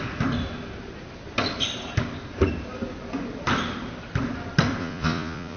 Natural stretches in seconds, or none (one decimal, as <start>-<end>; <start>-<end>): 0.0-4.8